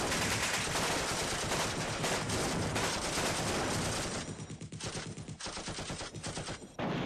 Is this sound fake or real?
real